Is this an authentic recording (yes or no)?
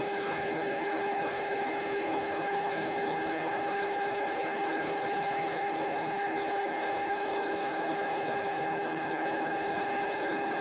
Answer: no